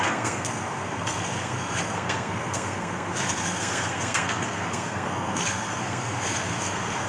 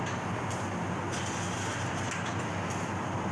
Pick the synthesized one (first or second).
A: first